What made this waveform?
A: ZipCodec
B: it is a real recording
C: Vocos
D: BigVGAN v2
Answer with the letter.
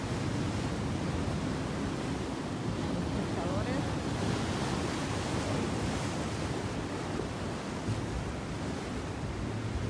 B